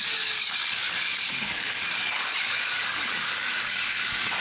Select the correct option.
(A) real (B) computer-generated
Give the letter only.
B